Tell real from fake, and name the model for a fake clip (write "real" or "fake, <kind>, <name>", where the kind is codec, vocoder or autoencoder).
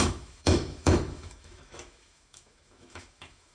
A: fake, autoencoder, DAC-VAE